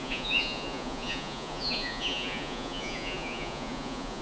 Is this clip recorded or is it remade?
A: remade